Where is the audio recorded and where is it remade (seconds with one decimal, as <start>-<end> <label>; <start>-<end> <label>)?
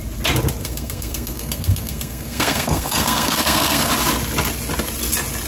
0.0-0.6 recorded; 0.6-3.9 remade; 3.9-5.5 recorded